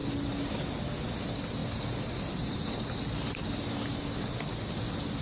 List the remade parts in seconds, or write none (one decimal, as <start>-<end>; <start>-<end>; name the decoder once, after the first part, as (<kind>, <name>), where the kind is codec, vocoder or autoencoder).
none